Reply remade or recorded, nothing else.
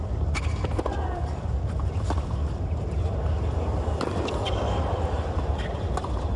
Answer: remade